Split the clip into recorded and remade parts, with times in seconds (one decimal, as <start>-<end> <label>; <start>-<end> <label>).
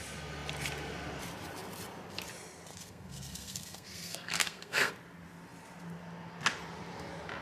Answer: 0.0-2.7 recorded; 2.7-4.9 remade; 4.9-7.4 recorded